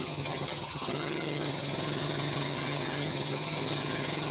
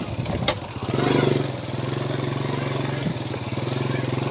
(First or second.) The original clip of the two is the second